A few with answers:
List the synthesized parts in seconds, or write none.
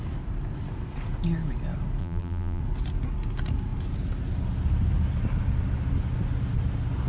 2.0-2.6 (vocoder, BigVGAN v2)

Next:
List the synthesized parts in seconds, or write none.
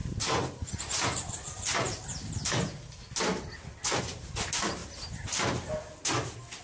4.0-4.8 (vocoder, BigVGAN v2); 6.1-6.6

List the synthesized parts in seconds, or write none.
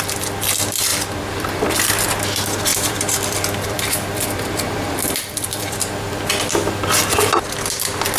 0.9-1.9 (vocoder, BigVGAN v2); 2.7-6.2